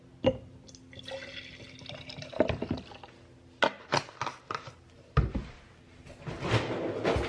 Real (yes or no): yes